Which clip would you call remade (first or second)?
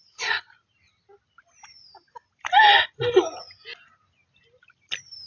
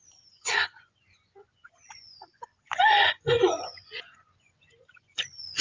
second